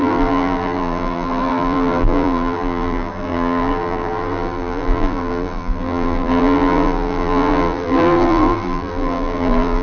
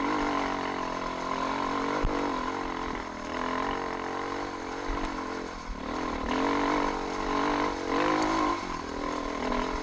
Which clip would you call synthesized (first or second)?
first